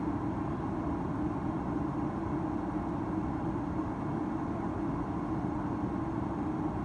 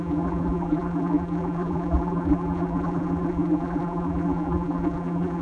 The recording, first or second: first